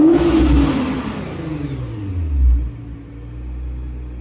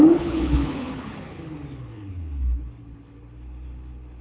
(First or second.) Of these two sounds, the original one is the first